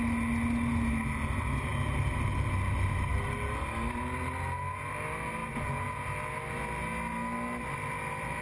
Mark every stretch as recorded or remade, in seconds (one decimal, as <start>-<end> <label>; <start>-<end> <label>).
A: 0.0-8.4 recorded